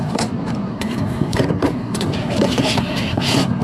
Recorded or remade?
remade